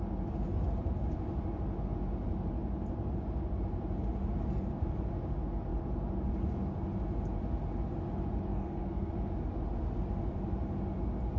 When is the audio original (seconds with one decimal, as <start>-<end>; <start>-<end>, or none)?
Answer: 0.0-8.5; 9.1-11.4